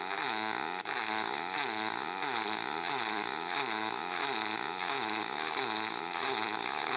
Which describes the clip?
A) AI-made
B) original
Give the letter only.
A